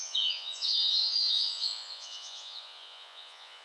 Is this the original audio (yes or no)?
no